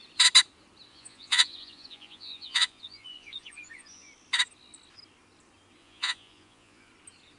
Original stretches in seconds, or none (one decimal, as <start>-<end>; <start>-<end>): 0.0-0.9; 4.1-5.8; 6.9-7.4